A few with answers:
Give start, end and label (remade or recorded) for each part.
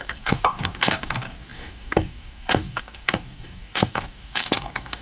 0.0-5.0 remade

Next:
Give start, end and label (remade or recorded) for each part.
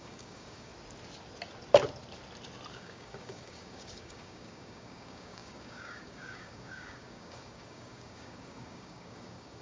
0.0-0.7 remade; 0.7-2.7 recorded; 2.7-9.6 remade